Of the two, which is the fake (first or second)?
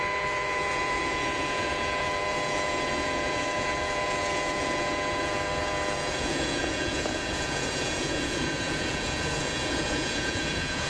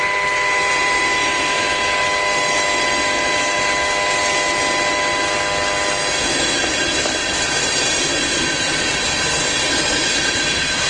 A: first